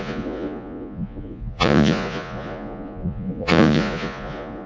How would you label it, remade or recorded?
remade